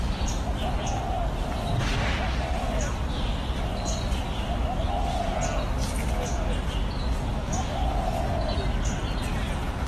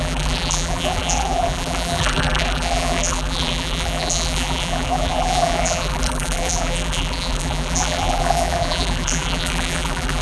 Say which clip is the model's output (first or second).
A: second